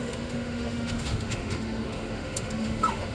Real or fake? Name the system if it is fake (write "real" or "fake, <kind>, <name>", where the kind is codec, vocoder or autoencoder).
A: fake, autoencoder, DAC-VAE